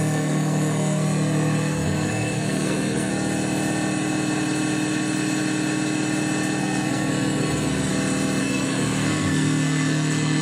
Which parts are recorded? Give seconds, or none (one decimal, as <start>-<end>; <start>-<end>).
3.1-6.6; 7.9-8.4